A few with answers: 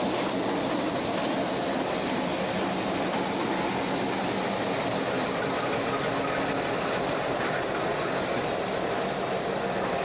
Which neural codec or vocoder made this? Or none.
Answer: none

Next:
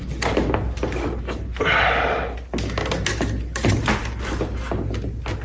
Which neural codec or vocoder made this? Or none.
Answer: none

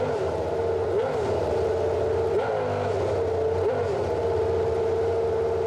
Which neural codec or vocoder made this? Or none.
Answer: none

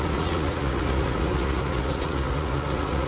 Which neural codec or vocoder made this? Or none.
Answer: vocoder, Vocos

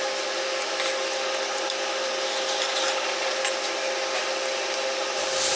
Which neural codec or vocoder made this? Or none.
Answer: none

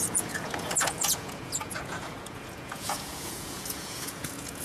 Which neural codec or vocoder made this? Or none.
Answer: vocoder, Vocos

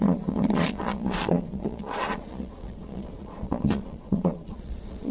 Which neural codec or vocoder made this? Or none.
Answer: vocoder, Vocos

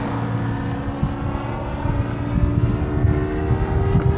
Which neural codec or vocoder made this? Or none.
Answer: none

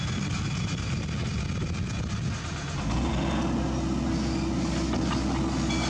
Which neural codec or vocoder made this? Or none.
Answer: none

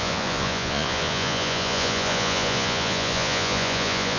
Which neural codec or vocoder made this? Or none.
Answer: vocoder, Vocos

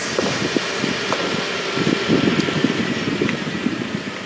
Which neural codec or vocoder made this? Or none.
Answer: none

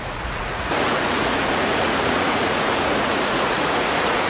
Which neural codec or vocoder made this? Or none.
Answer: vocoder, Vocos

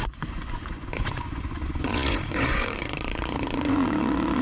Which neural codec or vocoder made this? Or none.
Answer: vocoder, Vocos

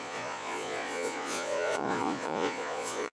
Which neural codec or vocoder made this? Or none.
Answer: vocoder, Vocos